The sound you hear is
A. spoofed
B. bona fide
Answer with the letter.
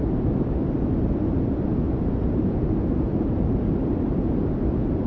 B